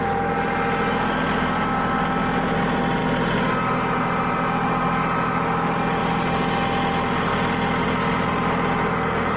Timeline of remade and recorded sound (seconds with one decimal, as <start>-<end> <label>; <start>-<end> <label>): 0.0-9.4 recorded

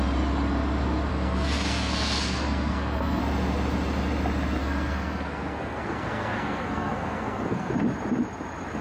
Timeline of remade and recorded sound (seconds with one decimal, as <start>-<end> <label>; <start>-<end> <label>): 0.0-1.1 recorded; 1.1-3.2 remade; 3.2-4.6 recorded; 4.6-7.7 remade; 7.7-8.8 recorded

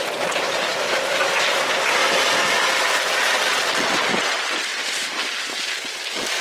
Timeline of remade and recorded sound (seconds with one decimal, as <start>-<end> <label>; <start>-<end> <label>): 0.0-6.4 recorded

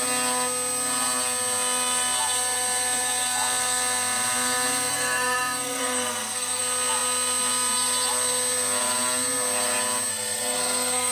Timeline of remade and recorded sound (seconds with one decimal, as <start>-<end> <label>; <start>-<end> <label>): 0.0-4.9 recorded; 4.9-6.6 remade; 6.6-10.1 recorded; 10.1-11.1 remade

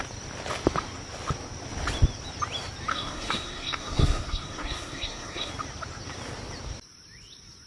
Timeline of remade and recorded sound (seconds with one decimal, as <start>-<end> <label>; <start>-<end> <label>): 0.0-2.9 recorded; 2.9-5.5 remade; 5.5-7.7 recorded

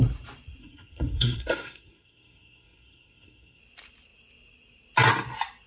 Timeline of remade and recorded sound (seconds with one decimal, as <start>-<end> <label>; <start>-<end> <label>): 0.0-0.6 recorded; 0.6-3.6 remade; 3.6-5.7 recorded

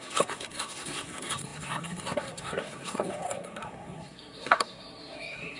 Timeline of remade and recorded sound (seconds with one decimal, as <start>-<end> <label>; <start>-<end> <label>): 0.0-5.6 remade